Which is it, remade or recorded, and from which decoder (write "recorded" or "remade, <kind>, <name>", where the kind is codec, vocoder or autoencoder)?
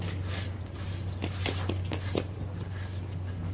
recorded